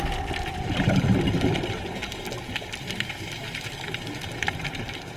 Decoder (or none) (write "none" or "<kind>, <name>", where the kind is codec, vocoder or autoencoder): none